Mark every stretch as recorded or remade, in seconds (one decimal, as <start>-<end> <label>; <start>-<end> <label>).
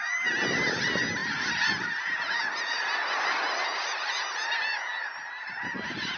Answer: 0.0-6.2 recorded